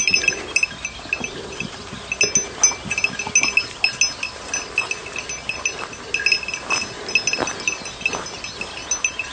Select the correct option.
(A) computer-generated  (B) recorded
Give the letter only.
B